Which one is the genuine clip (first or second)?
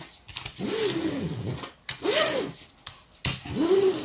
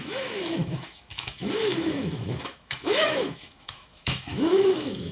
first